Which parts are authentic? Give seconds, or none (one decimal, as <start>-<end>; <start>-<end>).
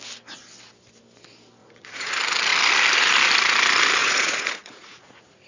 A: 0.0-1.6; 2.1-4.0